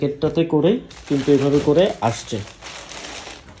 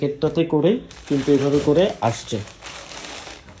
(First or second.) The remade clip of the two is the second